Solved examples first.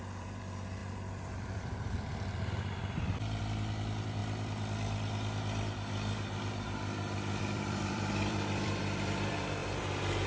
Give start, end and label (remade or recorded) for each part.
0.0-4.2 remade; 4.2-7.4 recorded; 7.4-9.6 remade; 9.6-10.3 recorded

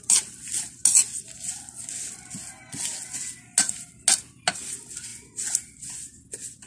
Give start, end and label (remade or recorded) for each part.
0.0-6.7 recorded

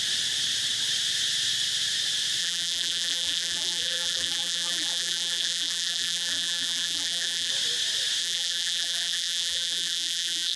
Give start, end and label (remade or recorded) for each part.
0.0-2.4 recorded; 2.4-7.5 remade; 7.5-8.2 recorded; 8.2-10.6 remade

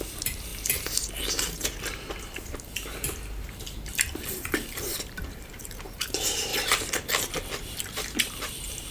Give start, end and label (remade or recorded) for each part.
0.0-6.5 remade; 6.5-8.2 recorded; 8.2-8.9 remade

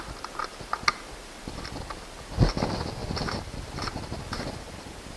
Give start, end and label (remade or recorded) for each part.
0.0-5.2 remade

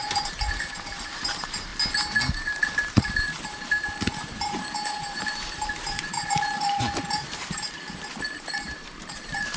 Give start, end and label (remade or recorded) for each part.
0.0-1.7 remade; 1.7-2.3 recorded; 2.3-9.6 remade

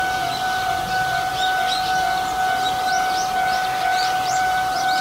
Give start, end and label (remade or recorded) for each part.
0.0-3.9 recorded; 3.9-5.0 remade

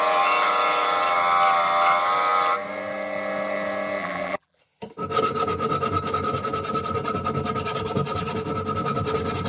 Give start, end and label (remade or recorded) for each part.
0.0-4.0 recorded; 4.0-4.6 remade; 4.6-9.5 recorded